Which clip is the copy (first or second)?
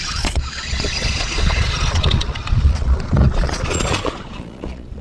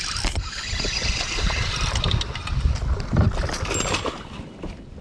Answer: first